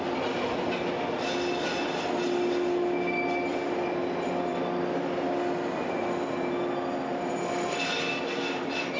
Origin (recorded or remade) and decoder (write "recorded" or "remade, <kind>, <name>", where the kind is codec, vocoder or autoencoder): recorded